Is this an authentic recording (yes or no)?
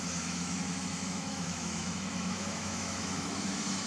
no